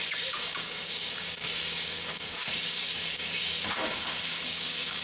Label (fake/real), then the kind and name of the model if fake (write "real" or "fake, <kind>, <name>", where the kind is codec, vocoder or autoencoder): fake, codec, DAC